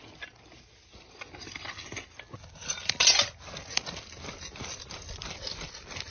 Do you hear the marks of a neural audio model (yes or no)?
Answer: no